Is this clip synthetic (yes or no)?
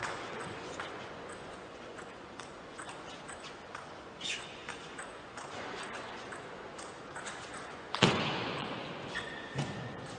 yes